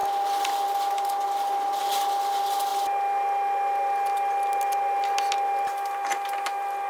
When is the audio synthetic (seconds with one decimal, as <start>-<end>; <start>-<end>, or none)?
none